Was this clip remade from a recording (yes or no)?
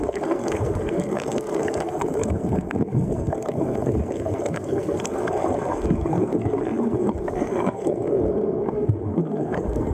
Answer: yes